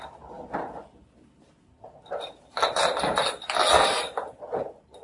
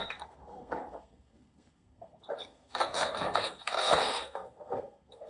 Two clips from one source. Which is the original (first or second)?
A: first